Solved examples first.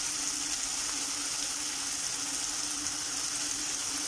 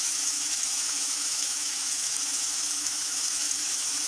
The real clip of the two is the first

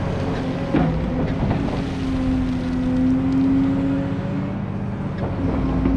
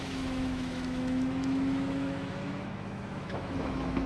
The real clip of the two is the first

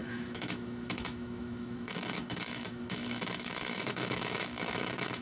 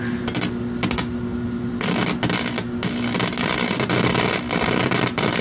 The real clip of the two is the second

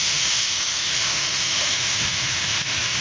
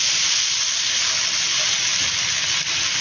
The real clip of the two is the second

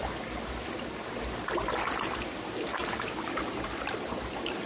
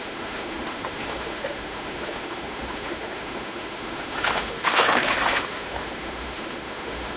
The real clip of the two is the first